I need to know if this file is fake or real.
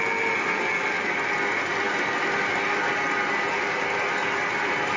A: real